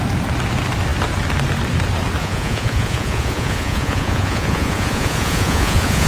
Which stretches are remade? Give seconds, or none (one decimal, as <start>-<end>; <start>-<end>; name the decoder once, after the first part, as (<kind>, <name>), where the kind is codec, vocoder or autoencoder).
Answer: 2.2-6.1 (vocoder, Vocos)